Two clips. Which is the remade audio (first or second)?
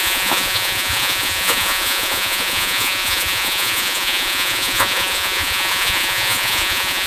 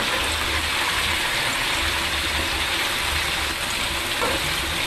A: first